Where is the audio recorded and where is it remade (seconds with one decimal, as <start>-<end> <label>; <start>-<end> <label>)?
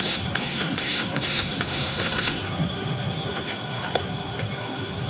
0.0-5.1 remade